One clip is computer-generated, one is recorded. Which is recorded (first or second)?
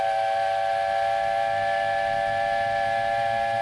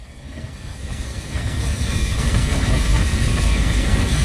first